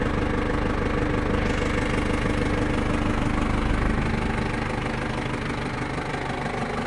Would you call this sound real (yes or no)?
yes